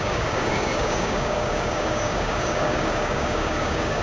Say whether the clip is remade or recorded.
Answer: remade